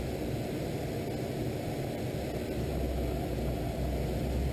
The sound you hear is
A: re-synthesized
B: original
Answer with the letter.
B